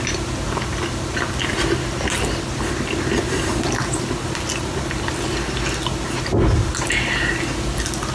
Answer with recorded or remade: recorded